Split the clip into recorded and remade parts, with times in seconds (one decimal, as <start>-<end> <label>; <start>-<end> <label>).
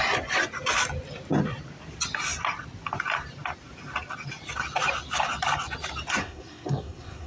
0.0-6.2 recorded; 6.2-7.3 remade